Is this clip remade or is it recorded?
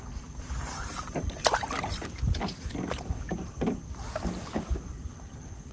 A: recorded